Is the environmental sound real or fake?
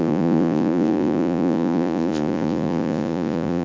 fake